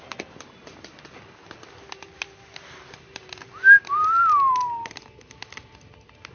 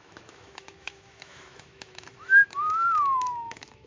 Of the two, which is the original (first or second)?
first